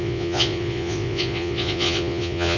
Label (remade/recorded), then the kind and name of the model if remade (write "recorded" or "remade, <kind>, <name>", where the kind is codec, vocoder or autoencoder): remade, vocoder, Vocos